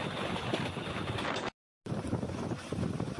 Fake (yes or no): no